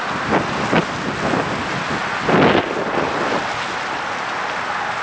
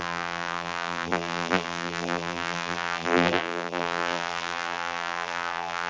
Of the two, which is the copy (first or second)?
second